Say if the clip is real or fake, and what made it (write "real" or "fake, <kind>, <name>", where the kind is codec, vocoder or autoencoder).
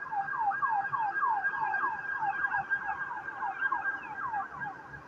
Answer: real